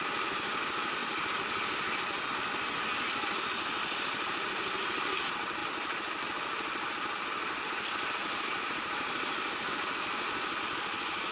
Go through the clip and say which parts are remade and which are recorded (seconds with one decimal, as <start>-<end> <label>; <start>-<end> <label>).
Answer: 0.0-1.0 recorded; 1.0-2.3 remade; 2.3-5.6 recorded; 5.6-10.6 remade; 10.6-11.3 recorded